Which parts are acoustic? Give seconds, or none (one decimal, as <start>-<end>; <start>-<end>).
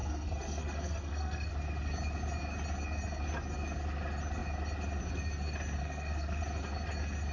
1.5-5.8; 6.4-7.3